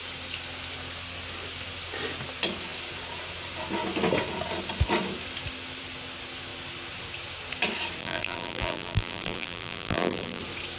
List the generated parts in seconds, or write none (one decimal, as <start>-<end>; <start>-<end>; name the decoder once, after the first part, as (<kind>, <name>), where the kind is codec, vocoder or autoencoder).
8.0-10.4 (vocoder, BigVGAN v2)